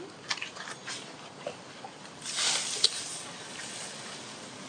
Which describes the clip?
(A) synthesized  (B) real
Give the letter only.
B